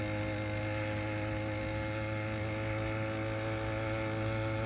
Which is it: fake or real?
real